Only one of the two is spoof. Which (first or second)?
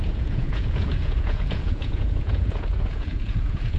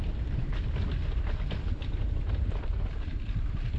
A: first